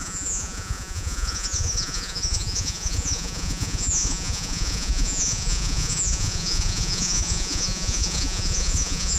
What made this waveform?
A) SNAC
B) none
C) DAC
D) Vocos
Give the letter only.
D